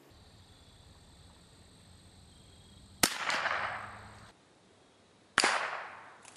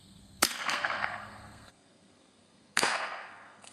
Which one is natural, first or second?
first